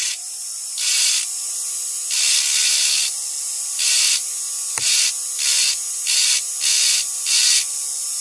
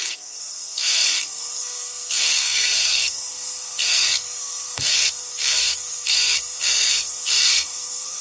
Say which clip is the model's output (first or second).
second